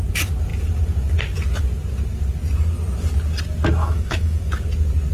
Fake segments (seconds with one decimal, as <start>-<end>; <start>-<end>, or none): 3.8-4.5